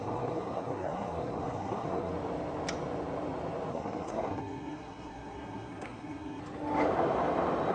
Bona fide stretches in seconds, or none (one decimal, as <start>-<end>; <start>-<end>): 2.1-3.7; 6.4-7.7